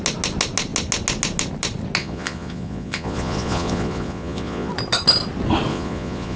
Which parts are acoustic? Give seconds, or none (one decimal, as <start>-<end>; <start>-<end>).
0.0-2.0; 4.7-5.7

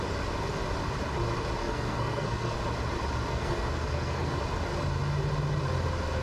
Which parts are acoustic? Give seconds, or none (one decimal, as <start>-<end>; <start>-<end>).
0.0-1.6; 2.6-3.3; 4.4-6.2

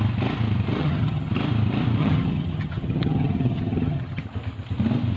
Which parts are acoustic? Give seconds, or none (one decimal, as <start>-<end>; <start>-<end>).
0.0-0.8; 1.3-2.0; 4.2-5.2

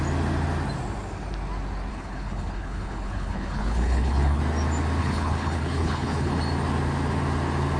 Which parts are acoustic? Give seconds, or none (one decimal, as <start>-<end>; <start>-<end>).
0.0-1.9; 4.4-5.0; 6.4-7.8

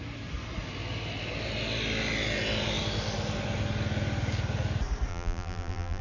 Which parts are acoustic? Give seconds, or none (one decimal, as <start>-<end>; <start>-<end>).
0.0-5.1